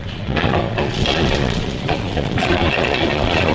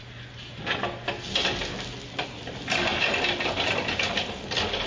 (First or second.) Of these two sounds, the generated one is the first